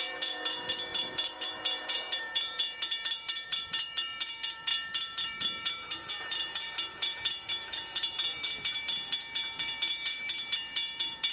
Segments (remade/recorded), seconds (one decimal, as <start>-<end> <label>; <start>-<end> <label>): 0.0-11.3 remade

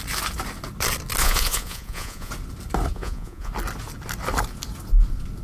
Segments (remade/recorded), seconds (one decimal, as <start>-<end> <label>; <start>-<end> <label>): 0.0-1.2 recorded; 1.2-2.3 remade; 2.3-2.9 recorded; 2.9-3.5 remade; 3.5-5.4 recorded